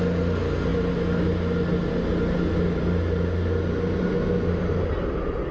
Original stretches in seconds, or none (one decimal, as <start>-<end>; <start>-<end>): 0.0-5.5